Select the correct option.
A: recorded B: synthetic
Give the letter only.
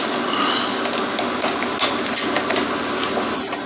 A